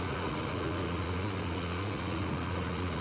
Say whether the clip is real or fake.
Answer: fake